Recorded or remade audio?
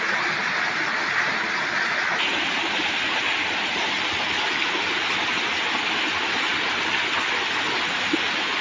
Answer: recorded